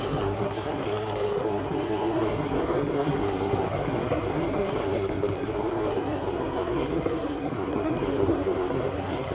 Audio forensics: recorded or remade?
remade